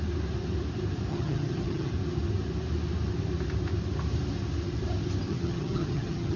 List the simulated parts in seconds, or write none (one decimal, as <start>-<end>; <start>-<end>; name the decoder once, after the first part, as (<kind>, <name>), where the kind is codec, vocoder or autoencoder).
1.1-1.9 (vocoder, HiFi-GAN); 5.3-6.4